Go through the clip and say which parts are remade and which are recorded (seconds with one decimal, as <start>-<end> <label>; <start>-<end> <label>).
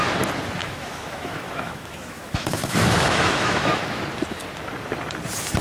0.0-0.6 recorded; 0.6-4.0 remade; 4.0-5.6 recorded